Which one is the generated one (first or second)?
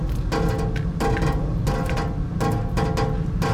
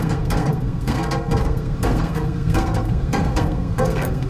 second